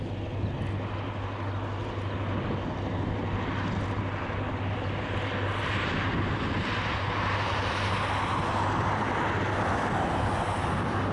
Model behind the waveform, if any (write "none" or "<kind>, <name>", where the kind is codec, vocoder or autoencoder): none